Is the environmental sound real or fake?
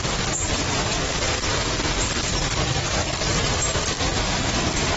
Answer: real